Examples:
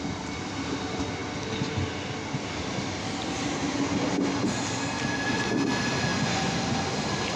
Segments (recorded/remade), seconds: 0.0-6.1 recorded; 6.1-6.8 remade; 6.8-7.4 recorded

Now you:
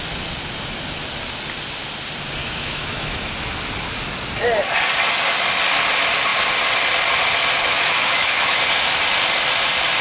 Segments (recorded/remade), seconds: 0.0-2.4 recorded; 2.4-3.3 remade; 3.3-7.7 recorded; 7.7-8.6 remade; 8.6-10.0 recorded

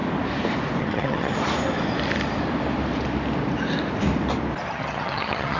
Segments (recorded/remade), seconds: 0.0-0.8 recorded; 0.8-1.3 remade; 1.3-4.7 recorded; 4.7-5.6 remade